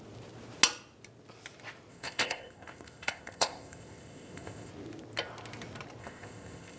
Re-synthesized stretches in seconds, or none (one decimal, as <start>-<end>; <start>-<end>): 1.9-4.7; 6.0-6.8

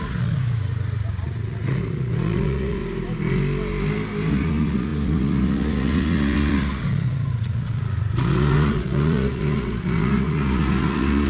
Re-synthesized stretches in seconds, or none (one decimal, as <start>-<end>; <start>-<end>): 0.0-2.8; 4.3-11.3

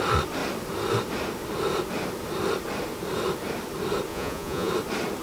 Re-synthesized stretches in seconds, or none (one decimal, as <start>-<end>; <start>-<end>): 4.1-4.7

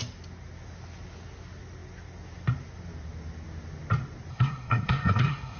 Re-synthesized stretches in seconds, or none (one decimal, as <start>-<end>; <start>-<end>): 4.3-5.6